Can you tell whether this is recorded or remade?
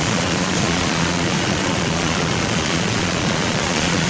remade